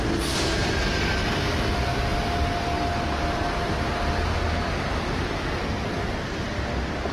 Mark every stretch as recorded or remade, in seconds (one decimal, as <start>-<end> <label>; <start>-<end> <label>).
0.0-7.1 recorded